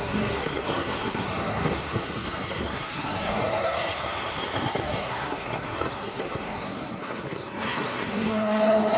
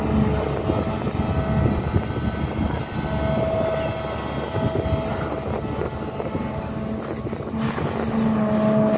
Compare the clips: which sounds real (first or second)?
second